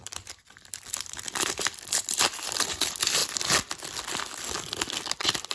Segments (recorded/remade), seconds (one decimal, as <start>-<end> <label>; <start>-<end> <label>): 0.0-3.2 remade; 3.2-4.9 recorded; 4.9-5.5 remade